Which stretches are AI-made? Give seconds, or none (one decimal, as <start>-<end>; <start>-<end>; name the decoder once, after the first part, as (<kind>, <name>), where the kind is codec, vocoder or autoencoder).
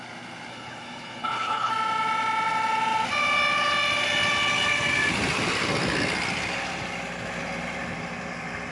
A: 0.5-1.7 (codec, HILCodec)